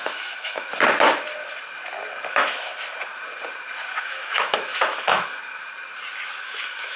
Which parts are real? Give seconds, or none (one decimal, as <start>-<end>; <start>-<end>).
0.7-2.3; 2.7-4.0; 5.4-6.4